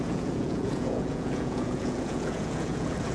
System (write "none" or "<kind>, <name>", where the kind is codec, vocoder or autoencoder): vocoder, Vocos